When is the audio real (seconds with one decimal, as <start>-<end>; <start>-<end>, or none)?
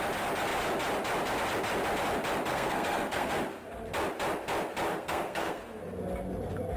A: 0.0-2.5; 3.3-4.9; 5.6-6.8